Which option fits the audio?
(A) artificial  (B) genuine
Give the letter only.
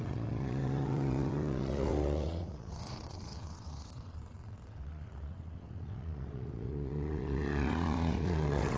A